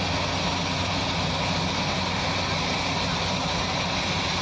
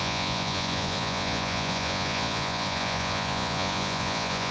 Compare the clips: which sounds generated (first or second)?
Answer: second